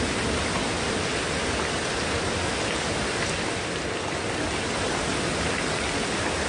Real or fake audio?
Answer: real